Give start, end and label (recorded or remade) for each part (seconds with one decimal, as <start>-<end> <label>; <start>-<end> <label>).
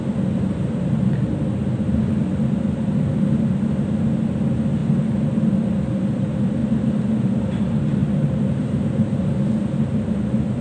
0.0-10.6 recorded